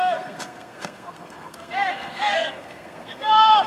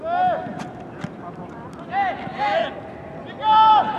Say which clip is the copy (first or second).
first